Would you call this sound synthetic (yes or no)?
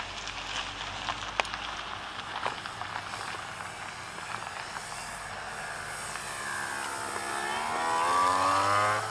no